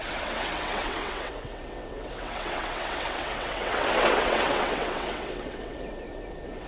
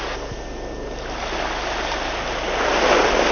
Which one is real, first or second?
second